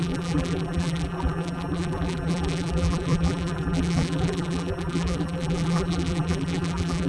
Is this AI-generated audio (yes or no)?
yes